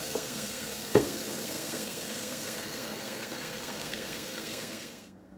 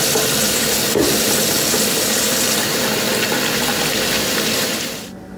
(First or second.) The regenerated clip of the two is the first